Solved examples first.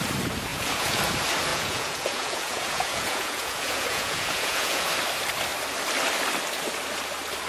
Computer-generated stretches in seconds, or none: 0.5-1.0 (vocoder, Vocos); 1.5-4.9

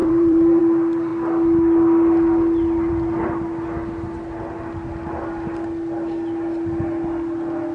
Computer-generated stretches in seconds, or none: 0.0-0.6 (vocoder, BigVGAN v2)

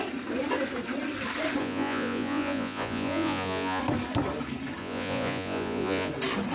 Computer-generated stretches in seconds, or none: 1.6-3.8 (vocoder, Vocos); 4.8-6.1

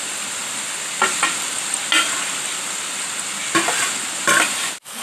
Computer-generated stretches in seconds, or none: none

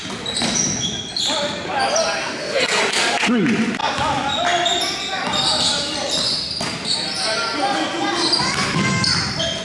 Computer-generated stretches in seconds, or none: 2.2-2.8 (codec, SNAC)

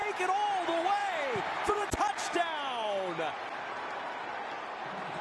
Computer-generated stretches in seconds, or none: 1.0-4.1 (vocoder, BigVGAN v2)

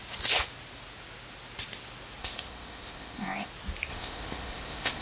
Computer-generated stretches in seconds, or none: 2.2-3.5 (codec, ZipCodec); 3.9-5.0

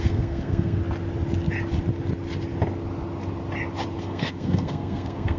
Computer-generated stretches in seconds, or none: 0.0-0.8 (codec, SNAC); 4.0-5.4